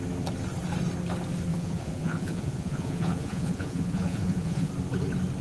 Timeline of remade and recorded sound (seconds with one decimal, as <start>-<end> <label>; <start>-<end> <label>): 0.0-1.5 recorded; 1.5-4.7 remade; 4.7-5.4 recorded